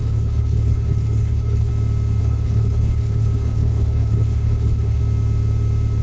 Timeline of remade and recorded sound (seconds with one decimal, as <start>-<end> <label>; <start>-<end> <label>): 0.0-1.7 remade; 1.7-2.2 recorded; 2.2-5.0 remade; 5.0-6.0 recorded